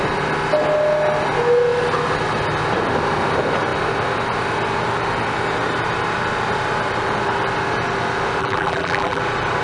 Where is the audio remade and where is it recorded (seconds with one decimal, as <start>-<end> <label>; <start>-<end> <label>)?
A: 0.0-8.4 recorded; 8.4-9.2 remade; 9.2-9.6 recorded